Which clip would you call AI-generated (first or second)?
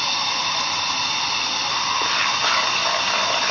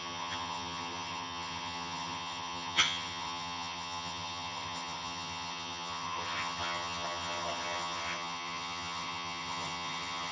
second